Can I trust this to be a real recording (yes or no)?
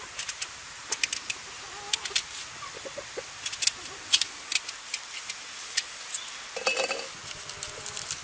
yes